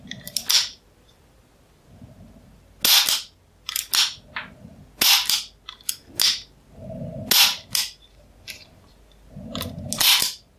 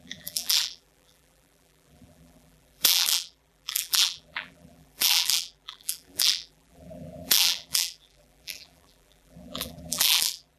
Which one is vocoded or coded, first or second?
second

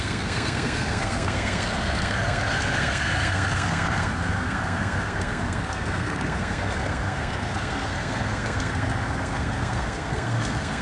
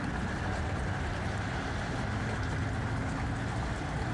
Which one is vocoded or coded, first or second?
first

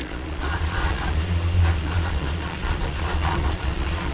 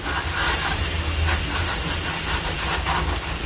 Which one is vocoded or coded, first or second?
first